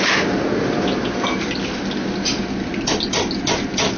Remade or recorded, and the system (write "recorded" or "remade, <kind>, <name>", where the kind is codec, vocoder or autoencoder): recorded